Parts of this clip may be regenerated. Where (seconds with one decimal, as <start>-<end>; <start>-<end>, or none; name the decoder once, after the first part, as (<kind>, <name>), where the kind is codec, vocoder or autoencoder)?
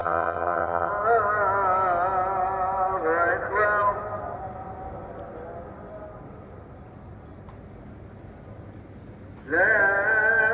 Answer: 0.0-0.9 (vocoder, HiFi-GAN)